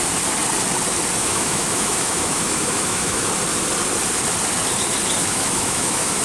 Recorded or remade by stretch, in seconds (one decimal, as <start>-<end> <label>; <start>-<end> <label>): 0.0-1.2 recorded; 1.2-3.3 remade; 3.3-5.2 recorded; 5.2-6.2 remade